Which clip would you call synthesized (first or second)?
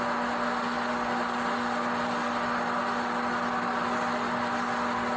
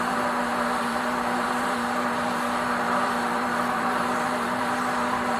second